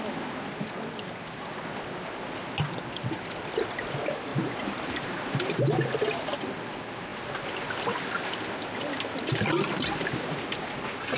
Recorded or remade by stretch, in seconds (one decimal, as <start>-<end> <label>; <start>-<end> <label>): 0.0-11.2 recorded